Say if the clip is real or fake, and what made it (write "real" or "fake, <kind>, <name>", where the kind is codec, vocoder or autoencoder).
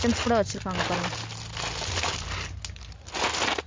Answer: real